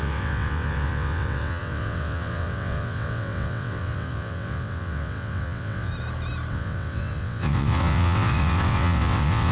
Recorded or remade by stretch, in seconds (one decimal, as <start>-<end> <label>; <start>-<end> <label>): 0.0-5.9 remade; 5.9-6.5 recorded; 6.5-9.5 remade